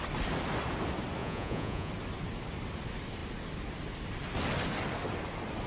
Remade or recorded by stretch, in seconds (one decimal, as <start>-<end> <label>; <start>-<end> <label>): 0.0-1.2 recorded; 1.2-1.9 remade; 1.9-5.7 recorded